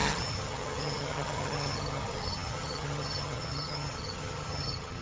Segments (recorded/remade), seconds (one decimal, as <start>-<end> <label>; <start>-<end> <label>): 0.0-5.0 remade